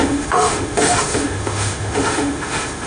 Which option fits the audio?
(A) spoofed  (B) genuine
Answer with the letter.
A